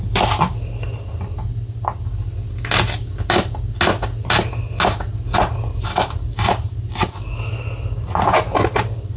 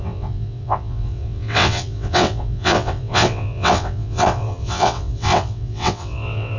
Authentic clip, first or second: first